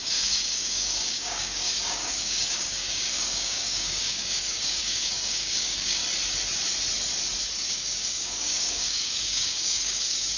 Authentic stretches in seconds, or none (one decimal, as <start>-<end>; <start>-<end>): 6.0-7.7